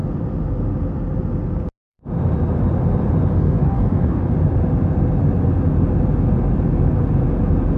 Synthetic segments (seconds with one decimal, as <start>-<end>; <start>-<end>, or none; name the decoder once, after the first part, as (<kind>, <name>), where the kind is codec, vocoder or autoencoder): 3.3-4.3 (codec, DAC)

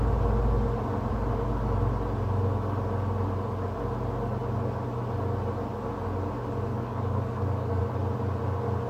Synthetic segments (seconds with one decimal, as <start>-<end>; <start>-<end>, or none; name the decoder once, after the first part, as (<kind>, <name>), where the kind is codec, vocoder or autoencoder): 6.7-7.8 (codec, DAC)

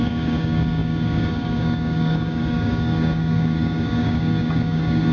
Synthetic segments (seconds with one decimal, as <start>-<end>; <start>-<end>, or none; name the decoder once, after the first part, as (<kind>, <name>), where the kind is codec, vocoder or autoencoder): 0.0-5.1 (codec, DAC)

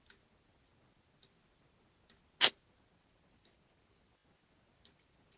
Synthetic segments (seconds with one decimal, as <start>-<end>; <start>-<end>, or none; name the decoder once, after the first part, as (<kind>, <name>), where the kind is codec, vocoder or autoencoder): none

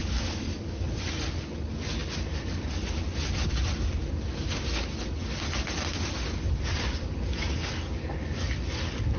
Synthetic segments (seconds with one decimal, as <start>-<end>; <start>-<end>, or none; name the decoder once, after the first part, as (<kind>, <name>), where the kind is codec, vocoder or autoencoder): 0.0-0.8 (codec, DAC); 7.3-8.2